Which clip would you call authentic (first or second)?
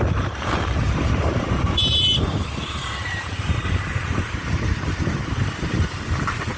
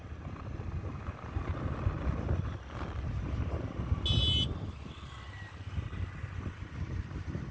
second